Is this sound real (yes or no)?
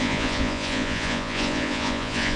no